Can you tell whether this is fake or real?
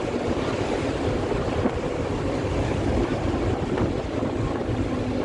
real